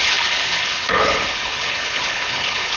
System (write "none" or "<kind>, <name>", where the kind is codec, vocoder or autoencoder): codec, HILCodec